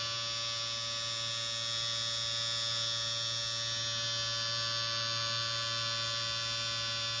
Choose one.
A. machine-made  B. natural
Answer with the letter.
B